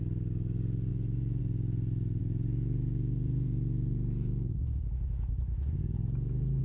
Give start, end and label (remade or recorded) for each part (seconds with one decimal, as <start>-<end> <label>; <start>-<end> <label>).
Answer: 0.0-0.9 recorded; 0.9-1.4 remade; 1.4-2.2 recorded; 2.2-6.6 remade